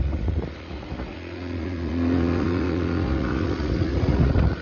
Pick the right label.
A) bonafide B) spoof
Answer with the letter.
B